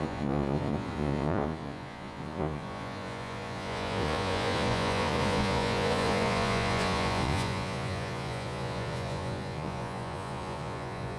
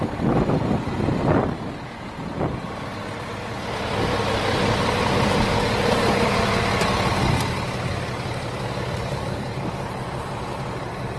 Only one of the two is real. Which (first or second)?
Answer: second